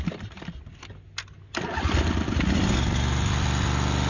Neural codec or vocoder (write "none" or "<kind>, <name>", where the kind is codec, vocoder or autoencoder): none